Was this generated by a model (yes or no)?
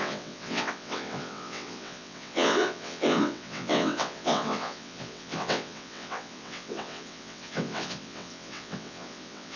yes